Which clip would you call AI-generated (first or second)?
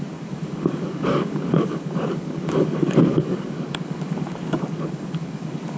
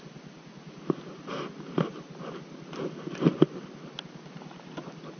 first